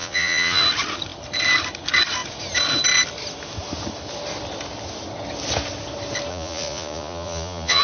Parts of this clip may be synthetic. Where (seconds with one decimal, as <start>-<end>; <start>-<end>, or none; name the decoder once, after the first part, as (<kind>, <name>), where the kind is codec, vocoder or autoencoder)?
0.0-0.6 (vocoder, Vocos); 6.3-7.8